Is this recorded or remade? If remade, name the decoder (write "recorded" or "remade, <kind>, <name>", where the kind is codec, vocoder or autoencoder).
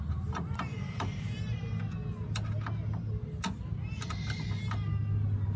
recorded